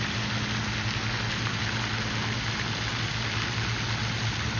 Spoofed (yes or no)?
no